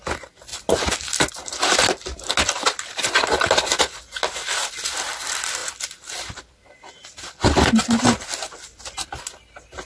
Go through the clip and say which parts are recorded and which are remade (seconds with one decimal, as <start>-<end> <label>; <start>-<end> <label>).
0.0-9.9 recorded